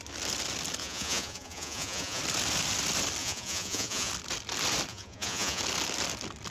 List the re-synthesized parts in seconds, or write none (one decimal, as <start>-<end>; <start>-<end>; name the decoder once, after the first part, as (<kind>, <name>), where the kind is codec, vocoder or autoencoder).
0.8-2.2 (vocoder, Vocos); 3.2-4.1; 4.9-5.6